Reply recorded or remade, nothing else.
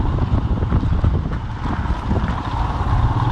recorded